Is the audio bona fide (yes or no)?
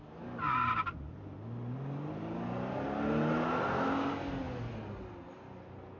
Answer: yes